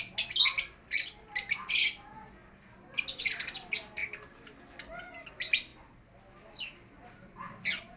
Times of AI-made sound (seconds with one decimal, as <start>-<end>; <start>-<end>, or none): none